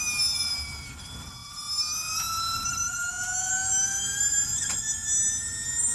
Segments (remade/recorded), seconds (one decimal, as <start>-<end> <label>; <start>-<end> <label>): 0.0-5.9 recorded